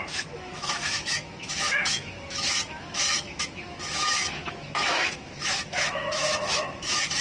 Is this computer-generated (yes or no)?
yes